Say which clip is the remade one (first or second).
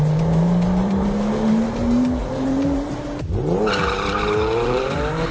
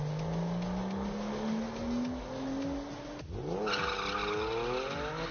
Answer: first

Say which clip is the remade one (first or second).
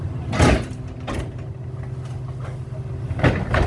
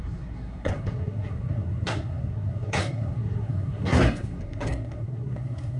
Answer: second